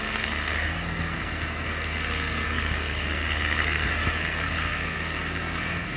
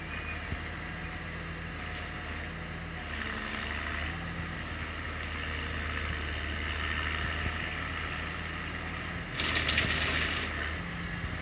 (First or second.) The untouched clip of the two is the second